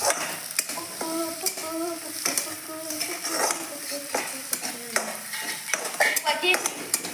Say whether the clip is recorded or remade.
remade